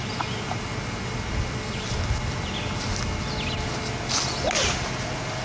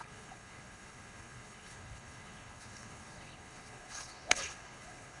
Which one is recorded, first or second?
first